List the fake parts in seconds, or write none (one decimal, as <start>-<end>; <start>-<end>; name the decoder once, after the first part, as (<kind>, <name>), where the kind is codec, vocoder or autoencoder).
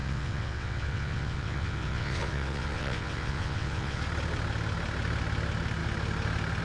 0.0-4.0 (vocoder, WaveNeXt)